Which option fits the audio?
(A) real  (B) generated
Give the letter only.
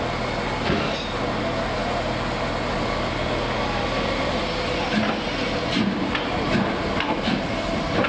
A